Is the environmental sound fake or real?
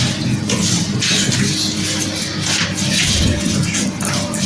real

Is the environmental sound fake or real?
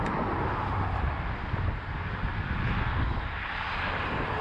real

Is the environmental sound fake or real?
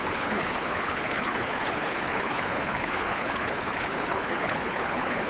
fake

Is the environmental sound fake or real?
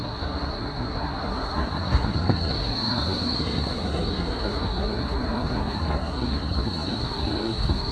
fake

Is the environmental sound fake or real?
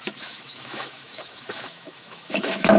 fake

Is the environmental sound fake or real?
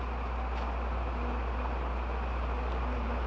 real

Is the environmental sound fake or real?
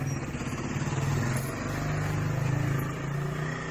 real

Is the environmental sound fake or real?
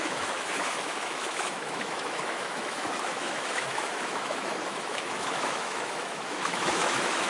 fake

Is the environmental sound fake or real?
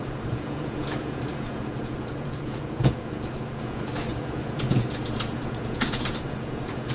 fake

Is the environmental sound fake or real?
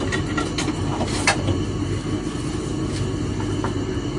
real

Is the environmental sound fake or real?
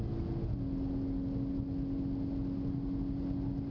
real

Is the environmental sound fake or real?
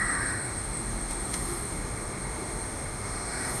fake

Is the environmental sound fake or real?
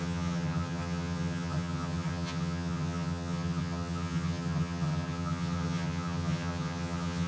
fake